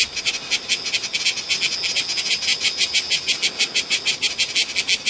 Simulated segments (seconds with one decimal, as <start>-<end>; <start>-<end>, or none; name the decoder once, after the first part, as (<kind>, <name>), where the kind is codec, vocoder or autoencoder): none